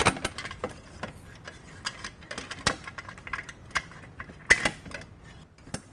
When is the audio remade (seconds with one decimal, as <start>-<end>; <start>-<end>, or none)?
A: 3.6-4.4